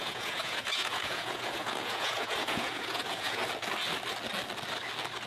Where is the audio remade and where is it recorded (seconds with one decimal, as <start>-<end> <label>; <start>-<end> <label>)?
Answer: 0.0-3.4 remade; 3.4-5.3 recorded